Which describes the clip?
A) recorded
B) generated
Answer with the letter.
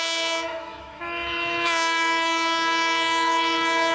B